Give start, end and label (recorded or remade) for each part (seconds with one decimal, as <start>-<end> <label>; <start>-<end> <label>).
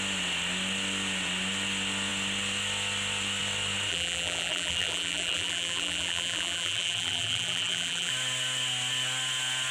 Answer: 0.0-3.9 recorded; 3.9-8.1 remade; 8.1-9.7 recorded